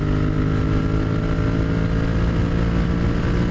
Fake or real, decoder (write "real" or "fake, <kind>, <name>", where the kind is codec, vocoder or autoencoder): real